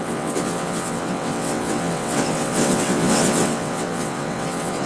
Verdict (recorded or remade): remade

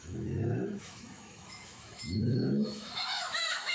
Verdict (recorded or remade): remade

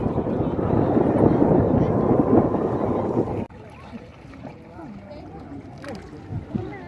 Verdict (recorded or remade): recorded